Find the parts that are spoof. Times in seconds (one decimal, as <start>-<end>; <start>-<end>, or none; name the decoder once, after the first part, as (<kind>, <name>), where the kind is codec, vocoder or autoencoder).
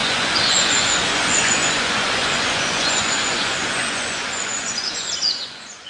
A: 0.0-5.9 (vocoder, Vocos)